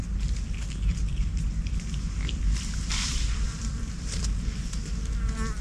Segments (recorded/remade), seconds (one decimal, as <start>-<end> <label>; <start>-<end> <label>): 0.0-0.9 recorded; 0.9-4.2 remade; 4.2-5.6 recorded